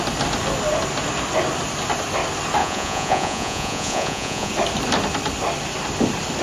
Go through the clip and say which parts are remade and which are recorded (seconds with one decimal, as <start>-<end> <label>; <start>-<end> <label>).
0.0-2.6 recorded; 2.6-4.5 remade; 4.5-6.4 recorded